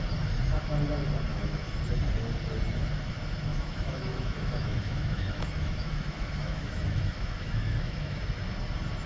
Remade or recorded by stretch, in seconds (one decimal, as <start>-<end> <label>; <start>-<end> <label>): 0.0-1.3 recorded; 1.3-1.8 remade; 1.8-3.5 recorded; 3.5-8.2 remade; 8.2-9.1 recorded